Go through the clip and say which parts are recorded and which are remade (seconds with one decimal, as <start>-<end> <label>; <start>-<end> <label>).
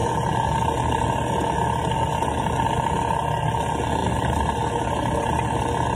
0.0-6.0 recorded